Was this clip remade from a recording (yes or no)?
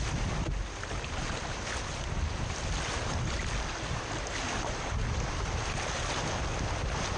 no